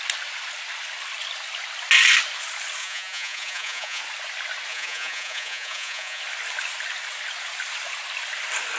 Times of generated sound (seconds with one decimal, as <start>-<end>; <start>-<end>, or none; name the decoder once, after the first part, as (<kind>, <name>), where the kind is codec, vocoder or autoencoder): 2.8-4.0 (vocoder, Vocos); 4.7-6.2